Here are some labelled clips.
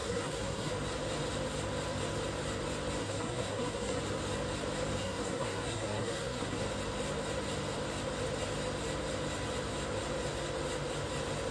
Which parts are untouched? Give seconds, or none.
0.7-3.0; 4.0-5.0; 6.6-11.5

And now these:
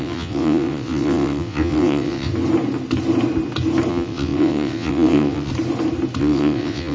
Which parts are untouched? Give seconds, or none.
2.3-3.9; 5.5-6.2

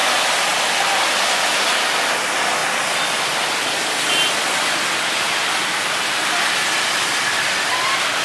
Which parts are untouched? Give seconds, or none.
0.0-8.2

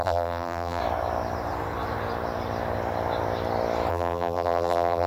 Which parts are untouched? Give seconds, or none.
0.8-3.9

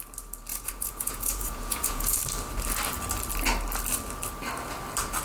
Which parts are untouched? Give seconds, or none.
0.0-0.5; 2.2-5.2

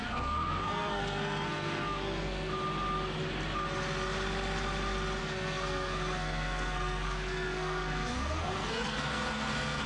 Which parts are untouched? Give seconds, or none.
2.5-5.2